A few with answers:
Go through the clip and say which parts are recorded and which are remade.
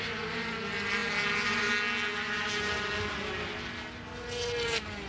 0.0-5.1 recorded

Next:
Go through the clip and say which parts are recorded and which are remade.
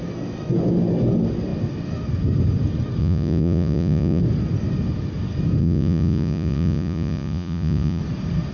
0.0-3.0 recorded; 3.0-4.2 remade; 4.2-5.6 recorded; 5.6-8.0 remade; 8.0-8.5 recorded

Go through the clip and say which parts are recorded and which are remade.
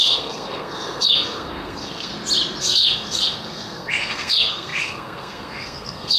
0.0-2.1 remade; 2.1-2.6 recorded; 2.6-6.2 remade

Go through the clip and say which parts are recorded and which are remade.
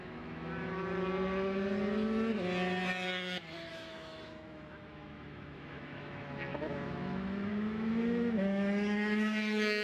0.0-0.8 remade; 0.8-3.7 recorded; 3.7-9.8 remade